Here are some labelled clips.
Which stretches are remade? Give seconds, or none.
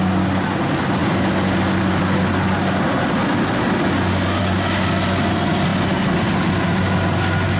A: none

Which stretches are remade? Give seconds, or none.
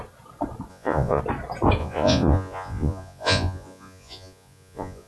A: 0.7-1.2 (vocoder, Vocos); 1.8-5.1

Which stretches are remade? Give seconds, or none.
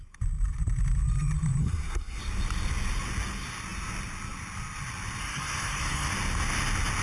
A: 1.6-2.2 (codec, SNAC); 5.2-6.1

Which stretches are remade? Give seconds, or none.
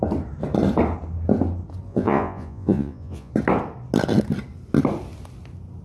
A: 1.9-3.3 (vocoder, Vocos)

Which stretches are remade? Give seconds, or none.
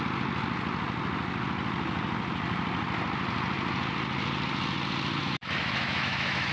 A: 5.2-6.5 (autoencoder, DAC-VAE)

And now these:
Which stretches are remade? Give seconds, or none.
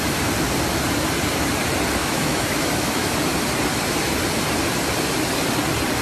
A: 2.0-3.1 (autoencoder, DAC-VAE)